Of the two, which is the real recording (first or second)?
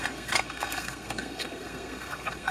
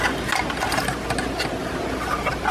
second